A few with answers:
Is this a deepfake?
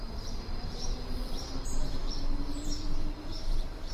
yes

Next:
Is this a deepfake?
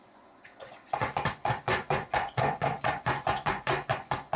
yes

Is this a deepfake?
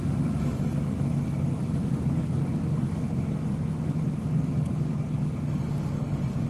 yes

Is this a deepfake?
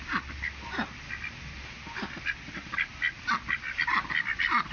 no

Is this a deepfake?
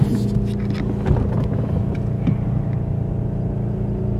no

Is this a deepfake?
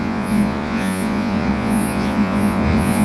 yes